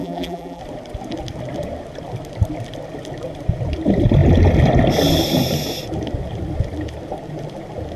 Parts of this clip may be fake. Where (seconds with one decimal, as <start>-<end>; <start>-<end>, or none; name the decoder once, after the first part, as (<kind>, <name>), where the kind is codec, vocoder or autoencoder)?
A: 0.0-0.6 (vocoder, BigVGAN v2)